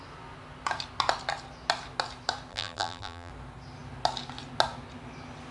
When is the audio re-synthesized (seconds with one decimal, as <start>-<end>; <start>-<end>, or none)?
2.5-3.3